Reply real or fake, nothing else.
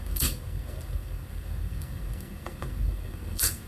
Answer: fake